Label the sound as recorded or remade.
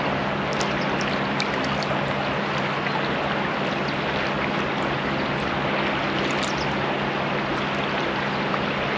recorded